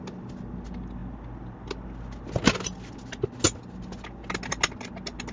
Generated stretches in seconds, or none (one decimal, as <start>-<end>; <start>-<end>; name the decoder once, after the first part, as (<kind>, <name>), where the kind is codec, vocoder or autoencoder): none